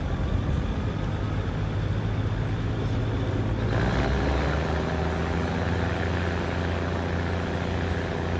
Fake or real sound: real